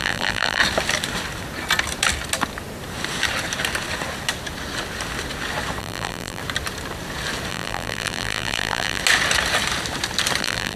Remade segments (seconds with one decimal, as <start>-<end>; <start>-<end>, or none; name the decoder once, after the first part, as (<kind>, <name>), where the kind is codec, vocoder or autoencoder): 0.0-0.6 (vocoder, BigVGAN v2); 5.8-6.4; 7.5-9.0; 10.4-10.8